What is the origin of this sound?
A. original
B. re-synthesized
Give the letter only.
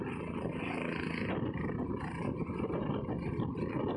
A